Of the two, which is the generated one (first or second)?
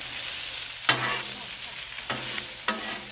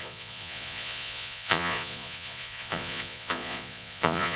second